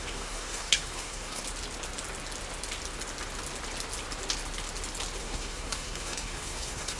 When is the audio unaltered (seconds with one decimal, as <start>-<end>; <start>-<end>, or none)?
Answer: 1.4-5.2